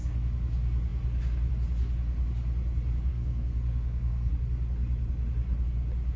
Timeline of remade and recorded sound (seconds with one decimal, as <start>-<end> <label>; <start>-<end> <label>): 0.0-3.1 recorded; 3.1-4.3 remade; 4.3-6.2 recorded